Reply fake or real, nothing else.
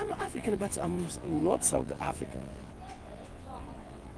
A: fake